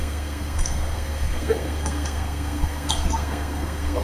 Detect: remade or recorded remade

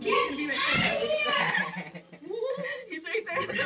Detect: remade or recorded recorded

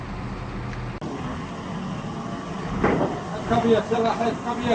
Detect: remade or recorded recorded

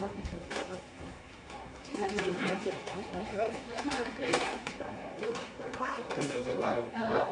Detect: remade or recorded remade